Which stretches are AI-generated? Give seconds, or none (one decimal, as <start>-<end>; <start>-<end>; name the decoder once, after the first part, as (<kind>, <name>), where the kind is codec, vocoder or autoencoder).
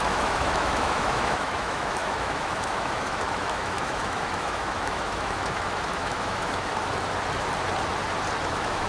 0.0-6.7 (autoencoder, DAC-VAE); 8.4-8.9